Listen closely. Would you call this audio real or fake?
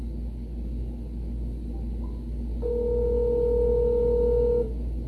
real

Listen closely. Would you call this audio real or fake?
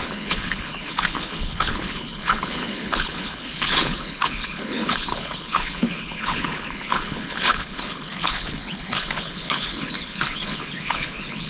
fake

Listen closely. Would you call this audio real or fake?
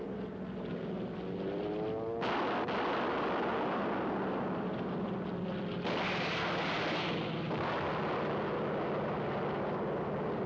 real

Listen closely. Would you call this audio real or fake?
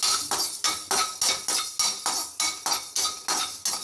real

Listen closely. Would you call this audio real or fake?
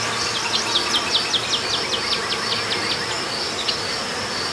real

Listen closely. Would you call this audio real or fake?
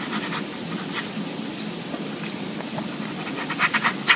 real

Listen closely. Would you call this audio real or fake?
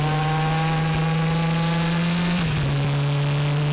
real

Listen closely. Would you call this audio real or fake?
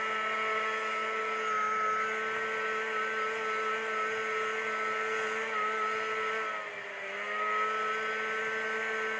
real